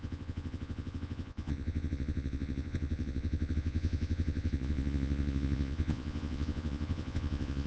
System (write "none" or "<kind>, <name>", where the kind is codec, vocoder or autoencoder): vocoder, Vocos